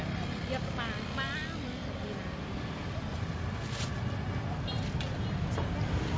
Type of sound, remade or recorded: recorded